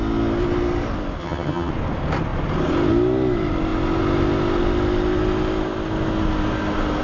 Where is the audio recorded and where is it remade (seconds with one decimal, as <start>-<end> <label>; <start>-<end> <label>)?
0.0-1.2 recorded; 1.2-1.7 remade; 1.7-7.0 recorded